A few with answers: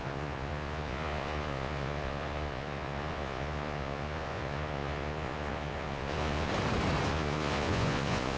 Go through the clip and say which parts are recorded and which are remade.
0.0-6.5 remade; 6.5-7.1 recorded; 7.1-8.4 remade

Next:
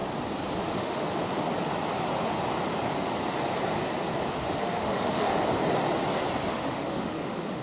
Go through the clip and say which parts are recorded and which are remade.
0.0-0.7 recorded; 0.7-1.1 remade; 1.1-4.3 recorded; 4.3-5.3 remade; 5.3-6.5 recorded; 6.5-7.6 remade